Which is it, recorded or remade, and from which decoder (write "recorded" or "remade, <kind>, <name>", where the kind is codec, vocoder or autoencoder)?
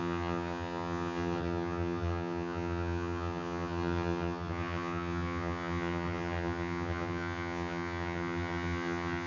remade, vocoder, HiFi-GAN